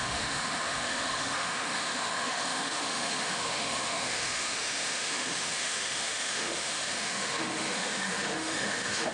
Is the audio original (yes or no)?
no